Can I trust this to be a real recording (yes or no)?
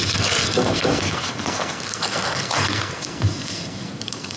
no